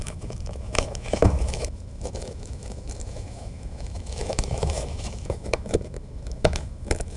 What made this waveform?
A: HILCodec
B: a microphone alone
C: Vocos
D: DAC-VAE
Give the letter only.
D